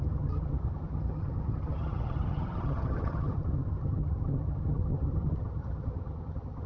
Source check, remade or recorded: remade